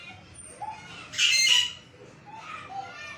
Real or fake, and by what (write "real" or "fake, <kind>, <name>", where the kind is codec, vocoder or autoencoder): real